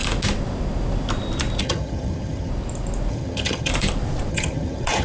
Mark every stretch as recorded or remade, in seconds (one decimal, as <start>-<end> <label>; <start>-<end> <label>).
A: 0.0-1.6 recorded; 1.6-2.5 remade; 2.5-3.1 recorded; 3.1-3.7 remade; 3.7-4.3 recorded; 4.3-5.0 remade